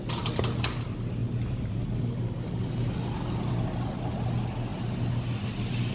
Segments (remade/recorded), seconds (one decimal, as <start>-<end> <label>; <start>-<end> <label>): 0.0-5.9 recorded